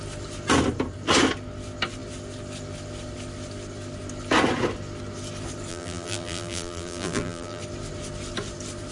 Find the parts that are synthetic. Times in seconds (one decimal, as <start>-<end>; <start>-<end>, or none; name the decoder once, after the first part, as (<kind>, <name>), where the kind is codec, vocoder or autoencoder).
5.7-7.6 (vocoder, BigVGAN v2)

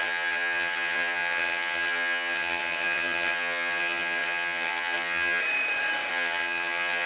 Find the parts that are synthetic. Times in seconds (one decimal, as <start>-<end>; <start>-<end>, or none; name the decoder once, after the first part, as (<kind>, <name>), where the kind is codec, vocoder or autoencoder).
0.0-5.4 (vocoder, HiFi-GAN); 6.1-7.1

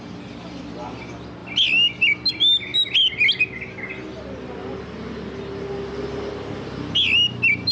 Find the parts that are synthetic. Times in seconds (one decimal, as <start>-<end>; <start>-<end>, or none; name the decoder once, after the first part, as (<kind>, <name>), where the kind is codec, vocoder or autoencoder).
none

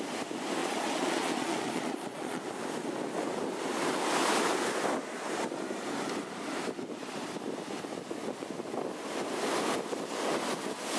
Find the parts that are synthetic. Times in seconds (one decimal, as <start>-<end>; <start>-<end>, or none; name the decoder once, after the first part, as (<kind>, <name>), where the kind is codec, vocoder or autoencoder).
0.6-2.4 (vocoder, Vocos)